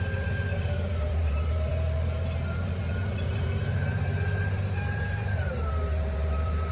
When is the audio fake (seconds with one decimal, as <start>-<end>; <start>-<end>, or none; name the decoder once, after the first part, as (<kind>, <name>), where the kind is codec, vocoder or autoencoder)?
0.0-6.7 (vocoder, BigVGAN v2)